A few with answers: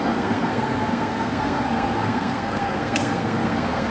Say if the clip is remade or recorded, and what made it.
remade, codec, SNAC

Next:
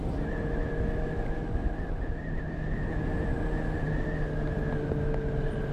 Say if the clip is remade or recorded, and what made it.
recorded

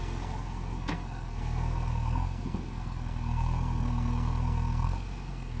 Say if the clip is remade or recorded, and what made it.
remade, codec, SNAC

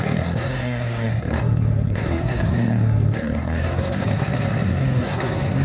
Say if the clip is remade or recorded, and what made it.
remade, codec, SNAC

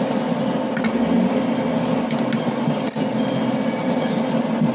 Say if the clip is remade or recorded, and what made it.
recorded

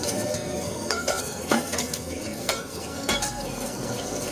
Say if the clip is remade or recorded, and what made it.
remade, codec, SNAC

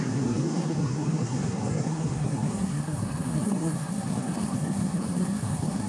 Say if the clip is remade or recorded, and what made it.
remade, codec, SNAC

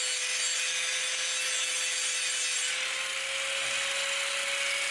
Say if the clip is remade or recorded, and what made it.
recorded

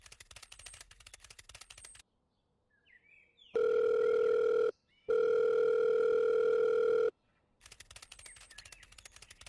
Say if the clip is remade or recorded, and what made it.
recorded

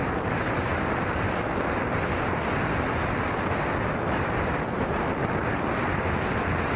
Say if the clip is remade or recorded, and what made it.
recorded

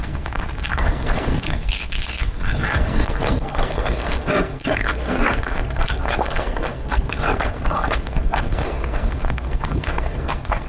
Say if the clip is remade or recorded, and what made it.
remade, codec, SNAC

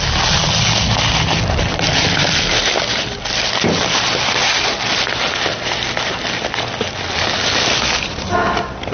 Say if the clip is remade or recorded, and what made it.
recorded